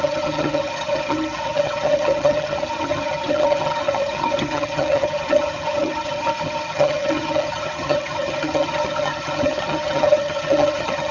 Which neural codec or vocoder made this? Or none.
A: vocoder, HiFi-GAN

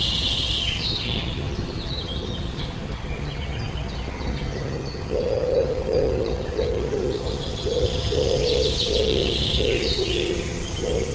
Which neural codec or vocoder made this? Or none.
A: vocoder, HiFi-GAN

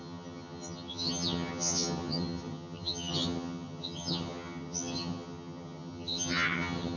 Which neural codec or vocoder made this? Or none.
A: vocoder, HiFi-GAN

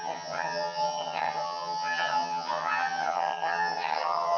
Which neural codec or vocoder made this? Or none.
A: vocoder, HiFi-GAN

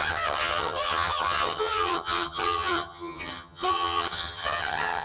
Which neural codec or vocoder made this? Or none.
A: vocoder, HiFi-GAN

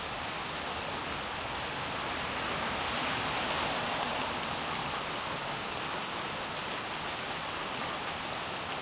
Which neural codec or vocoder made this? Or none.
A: none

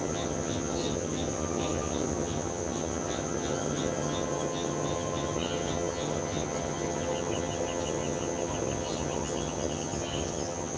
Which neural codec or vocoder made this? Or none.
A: vocoder, HiFi-GAN